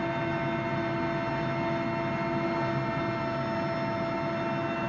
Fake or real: real